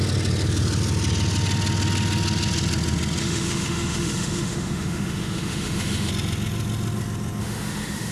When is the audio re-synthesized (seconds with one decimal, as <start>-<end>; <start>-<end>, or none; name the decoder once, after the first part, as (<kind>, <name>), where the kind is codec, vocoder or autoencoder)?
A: 3.2-6.1 (autoencoder, DAC-VAE); 7.4-8.1